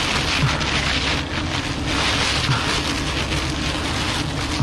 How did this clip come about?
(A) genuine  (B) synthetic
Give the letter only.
A